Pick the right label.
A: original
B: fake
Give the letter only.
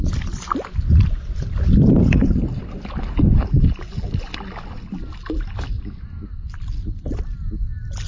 A